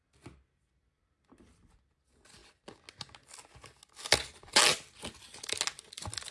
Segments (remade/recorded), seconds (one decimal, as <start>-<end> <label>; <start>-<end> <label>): 0.0-6.3 recorded